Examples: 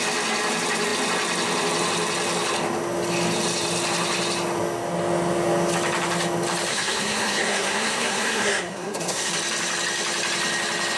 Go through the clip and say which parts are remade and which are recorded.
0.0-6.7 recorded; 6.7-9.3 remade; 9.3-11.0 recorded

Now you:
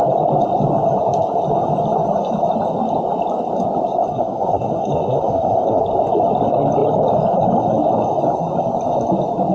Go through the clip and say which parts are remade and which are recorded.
0.0-4.1 recorded; 4.1-5.8 remade; 5.8-9.5 recorded

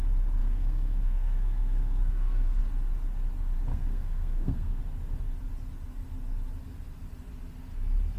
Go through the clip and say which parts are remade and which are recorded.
0.0-0.4 recorded; 0.4-2.6 remade; 2.6-3.7 recorded; 3.7-4.8 remade; 4.8-8.2 recorded

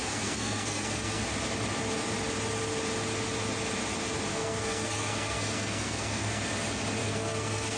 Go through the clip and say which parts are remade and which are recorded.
0.0-1.2 remade; 1.2-4.3 recorded; 4.3-6.5 remade; 6.5-7.0 recorded; 7.0-7.8 remade

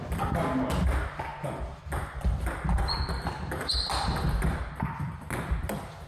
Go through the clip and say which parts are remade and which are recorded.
0.0-6.1 recorded

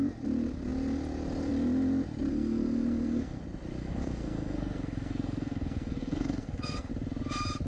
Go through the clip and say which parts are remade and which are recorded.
0.0-2.3 recorded; 2.3-3.4 remade; 3.4-3.8 recorded; 3.8-6.9 remade; 6.9-7.7 recorded